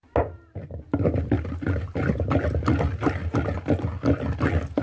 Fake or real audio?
real